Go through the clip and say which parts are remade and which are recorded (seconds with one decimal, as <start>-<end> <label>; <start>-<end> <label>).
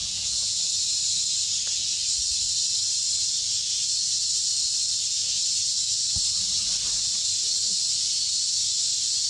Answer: 0.0-0.6 remade; 0.6-9.3 recorded